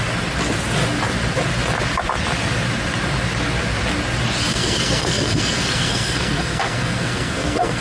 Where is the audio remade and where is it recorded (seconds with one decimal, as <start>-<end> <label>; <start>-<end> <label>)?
0.0-4.5 recorded; 4.5-7.8 remade